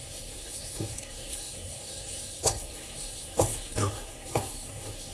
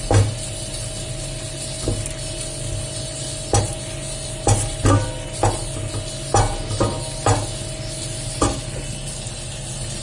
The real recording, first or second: second